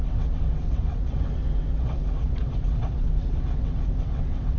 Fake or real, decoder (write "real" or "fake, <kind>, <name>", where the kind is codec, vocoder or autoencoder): fake, vocoder, WaveNeXt